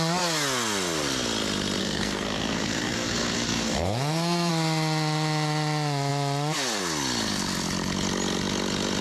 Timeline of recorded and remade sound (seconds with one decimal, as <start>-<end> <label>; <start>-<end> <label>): 0.0-1.8 recorded; 1.8-4.5 remade; 4.5-9.0 recorded